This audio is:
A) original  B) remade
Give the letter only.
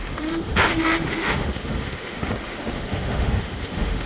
B